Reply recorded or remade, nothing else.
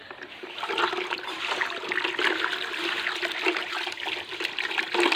recorded